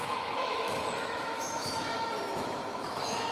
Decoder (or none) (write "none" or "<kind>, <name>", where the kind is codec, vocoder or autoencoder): autoencoder, DAC-VAE